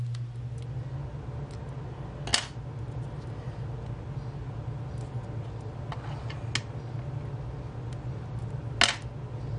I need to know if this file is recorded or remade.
recorded